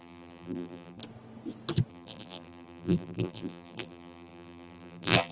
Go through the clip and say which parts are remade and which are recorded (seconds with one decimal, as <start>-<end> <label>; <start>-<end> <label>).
0.0-1.0 remade; 1.0-1.9 recorded; 1.9-5.3 remade